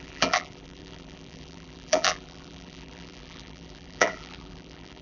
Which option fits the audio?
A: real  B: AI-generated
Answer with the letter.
B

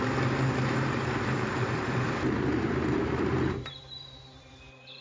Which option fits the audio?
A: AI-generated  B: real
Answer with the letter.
A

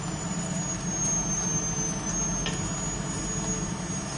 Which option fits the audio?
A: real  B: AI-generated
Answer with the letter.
A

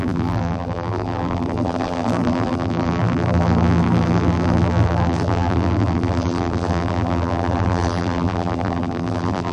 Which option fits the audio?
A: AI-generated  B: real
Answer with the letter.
A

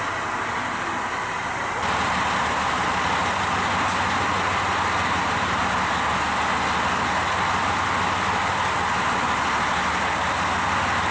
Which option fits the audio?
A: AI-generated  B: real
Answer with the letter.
B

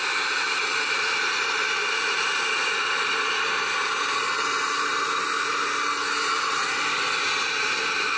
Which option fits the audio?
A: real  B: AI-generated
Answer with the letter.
A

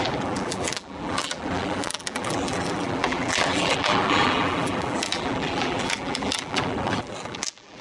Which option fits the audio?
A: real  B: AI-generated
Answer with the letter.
B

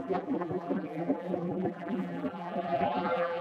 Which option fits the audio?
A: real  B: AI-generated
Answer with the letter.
B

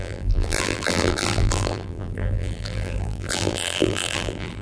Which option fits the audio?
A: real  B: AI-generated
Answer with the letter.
B